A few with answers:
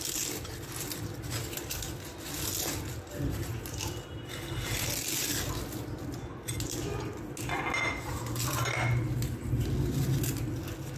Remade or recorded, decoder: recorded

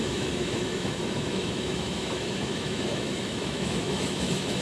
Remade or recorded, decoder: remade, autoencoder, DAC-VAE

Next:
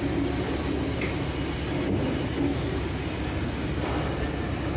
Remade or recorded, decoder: recorded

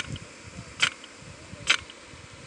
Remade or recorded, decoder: recorded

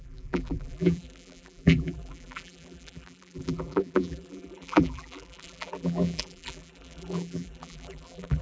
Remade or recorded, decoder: remade, vocoder, BigVGAN v2